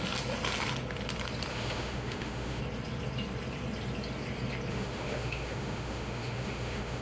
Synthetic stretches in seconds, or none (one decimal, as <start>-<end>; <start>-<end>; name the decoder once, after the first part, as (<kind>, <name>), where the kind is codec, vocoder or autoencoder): 1.5-2.6 (autoencoder, DAC-VAE); 4.7-7.0